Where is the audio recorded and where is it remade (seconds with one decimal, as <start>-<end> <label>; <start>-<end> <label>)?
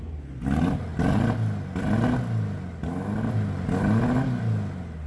0.0-5.1 recorded